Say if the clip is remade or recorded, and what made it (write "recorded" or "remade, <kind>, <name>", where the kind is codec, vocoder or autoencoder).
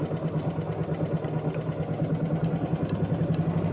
recorded